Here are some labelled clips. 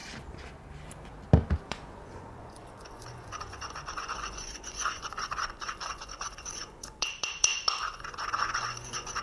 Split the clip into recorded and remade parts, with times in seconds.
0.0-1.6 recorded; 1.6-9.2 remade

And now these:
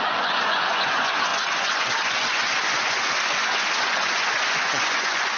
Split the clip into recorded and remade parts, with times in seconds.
0.0-5.4 remade